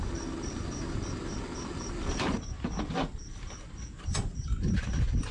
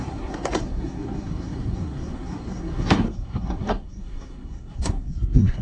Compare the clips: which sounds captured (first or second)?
first